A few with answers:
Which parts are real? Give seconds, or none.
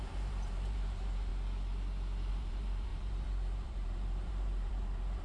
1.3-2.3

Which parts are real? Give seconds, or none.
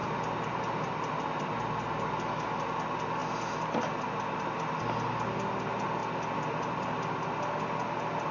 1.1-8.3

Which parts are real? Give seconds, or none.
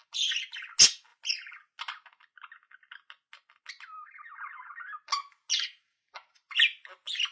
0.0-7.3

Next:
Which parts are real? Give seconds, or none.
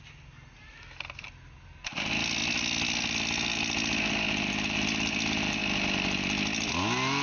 0.0-7.2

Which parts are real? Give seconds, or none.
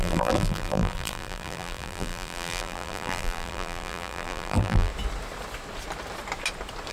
4.9-6.9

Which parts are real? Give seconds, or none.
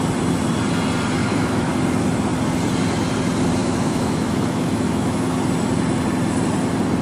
0.0-1.2; 1.7-3.6; 5.4-7.0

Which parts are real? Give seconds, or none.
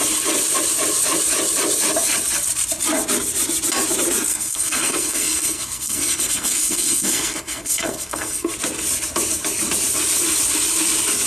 0.0-4.3; 8.5-11.3